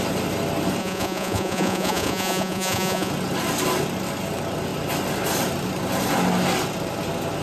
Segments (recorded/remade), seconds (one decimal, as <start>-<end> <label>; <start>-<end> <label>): 0.0-0.8 recorded; 0.8-3.1 remade; 3.1-7.4 recorded